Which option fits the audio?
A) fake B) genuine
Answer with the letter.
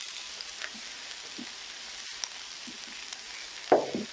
B